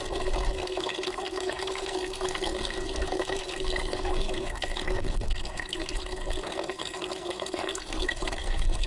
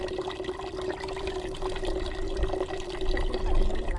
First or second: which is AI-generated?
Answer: first